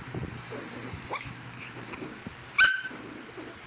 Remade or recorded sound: recorded